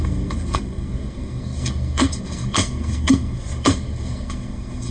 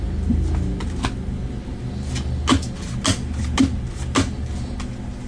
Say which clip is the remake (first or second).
first